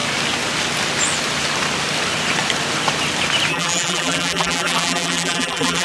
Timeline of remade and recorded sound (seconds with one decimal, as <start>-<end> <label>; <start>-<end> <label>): 0.0-3.5 recorded; 3.5-5.8 remade